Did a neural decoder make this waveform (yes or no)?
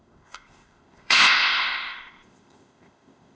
yes